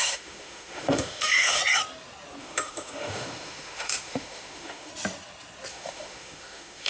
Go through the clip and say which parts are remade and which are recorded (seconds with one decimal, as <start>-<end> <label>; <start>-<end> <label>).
0.0-1.6 remade; 1.6-2.4 recorded; 2.4-4.9 remade; 4.9-5.7 recorded; 5.7-6.9 remade